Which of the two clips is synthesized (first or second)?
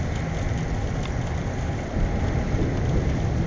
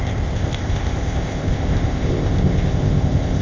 second